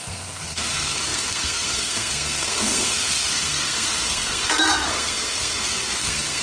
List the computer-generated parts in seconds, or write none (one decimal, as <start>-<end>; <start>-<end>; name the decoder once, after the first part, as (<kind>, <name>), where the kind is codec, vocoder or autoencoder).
0.0-6.4 (codec, SNAC)